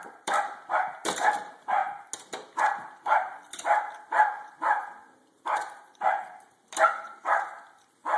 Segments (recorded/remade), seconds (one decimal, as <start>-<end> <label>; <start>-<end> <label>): 0.0-1.8 remade; 1.8-2.5 recorded; 2.5-8.2 remade